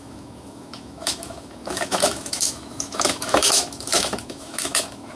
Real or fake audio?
fake